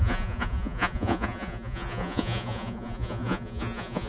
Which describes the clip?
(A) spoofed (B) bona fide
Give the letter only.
A